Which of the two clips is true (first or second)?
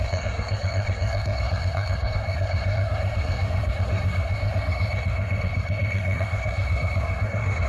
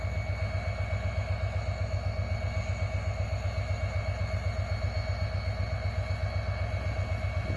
second